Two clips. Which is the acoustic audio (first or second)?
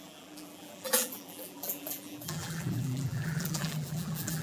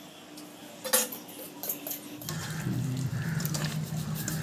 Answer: second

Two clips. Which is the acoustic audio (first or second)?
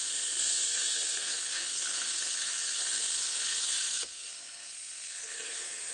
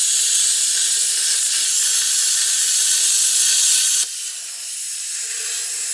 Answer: second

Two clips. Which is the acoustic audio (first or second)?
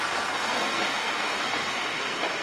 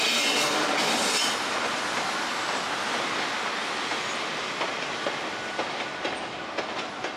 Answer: second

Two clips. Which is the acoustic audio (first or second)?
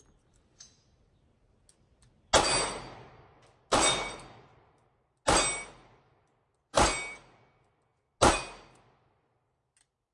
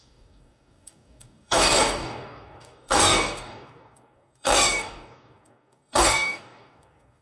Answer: first